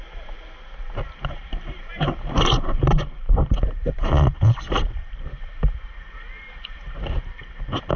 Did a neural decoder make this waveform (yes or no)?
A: yes